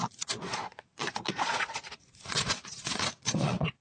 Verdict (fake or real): fake